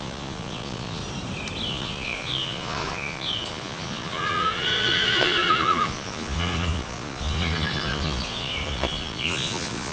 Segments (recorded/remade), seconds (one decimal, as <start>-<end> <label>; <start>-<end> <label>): 0.0-1.0 remade; 1.0-1.7 recorded; 1.7-9.9 remade